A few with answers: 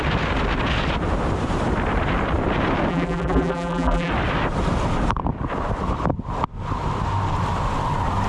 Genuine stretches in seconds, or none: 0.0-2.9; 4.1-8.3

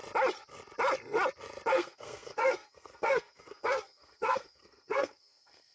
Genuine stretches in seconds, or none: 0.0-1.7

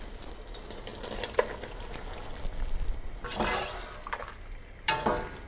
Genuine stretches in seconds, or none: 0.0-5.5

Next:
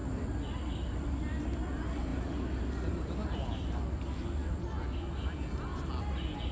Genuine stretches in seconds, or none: 0.0-6.5

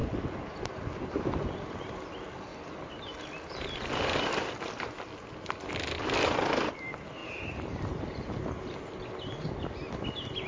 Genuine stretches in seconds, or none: 0.0-7.2; 7.9-10.5